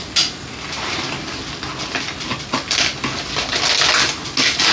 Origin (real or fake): real